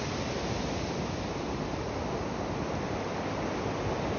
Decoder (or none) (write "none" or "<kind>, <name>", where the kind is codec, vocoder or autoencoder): none